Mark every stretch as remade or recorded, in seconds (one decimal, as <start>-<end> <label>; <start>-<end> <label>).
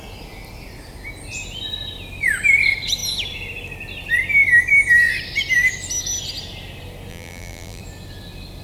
0.0-7.1 recorded; 7.1-7.8 remade; 7.8-8.6 recorded